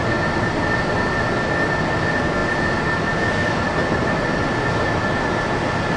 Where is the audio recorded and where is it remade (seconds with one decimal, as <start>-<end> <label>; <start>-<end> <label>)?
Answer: 0.0-6.0 recorded